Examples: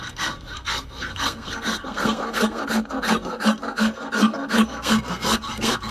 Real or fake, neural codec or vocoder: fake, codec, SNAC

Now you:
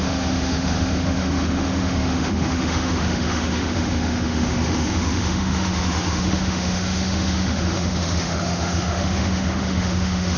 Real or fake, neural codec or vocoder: fake, autoencoder, DAC-VAE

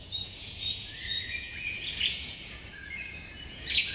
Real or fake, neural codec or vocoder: fake, vocoder, Vocos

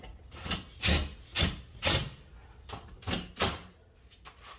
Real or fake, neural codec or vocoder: real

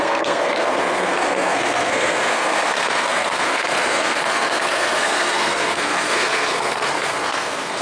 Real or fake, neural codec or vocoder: fake, codec, SNAC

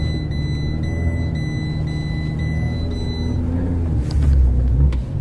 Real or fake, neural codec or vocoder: real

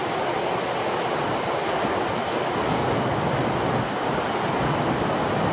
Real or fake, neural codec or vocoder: real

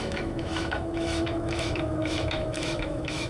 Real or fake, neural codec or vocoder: fake, autoencoder, DAC-VAE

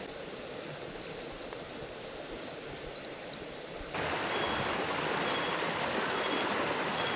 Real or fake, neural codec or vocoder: real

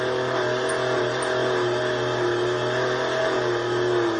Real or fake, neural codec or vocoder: real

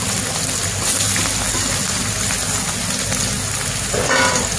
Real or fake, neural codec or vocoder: real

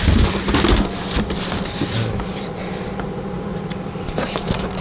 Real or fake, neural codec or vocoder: real